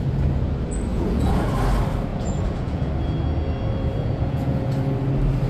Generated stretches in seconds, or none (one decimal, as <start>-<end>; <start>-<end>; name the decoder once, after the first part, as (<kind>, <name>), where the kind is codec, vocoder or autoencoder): 0.9-1.5 (vocoder, Vocos); 2.1-2.9; 4.0-4.7